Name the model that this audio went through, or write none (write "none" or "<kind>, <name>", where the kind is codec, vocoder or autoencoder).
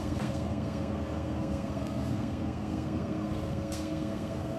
codec, SNAC